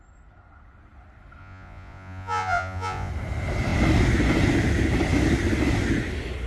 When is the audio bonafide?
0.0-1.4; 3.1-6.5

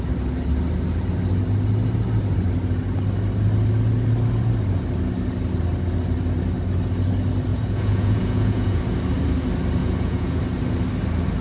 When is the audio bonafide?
0.0-7.5; 8.8-9.8; 10.4-11.4

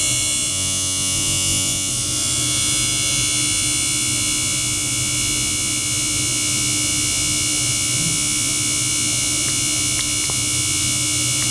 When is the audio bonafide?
0.0-0.5; 1.9-11.5